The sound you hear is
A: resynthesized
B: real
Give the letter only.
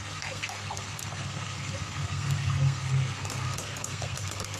A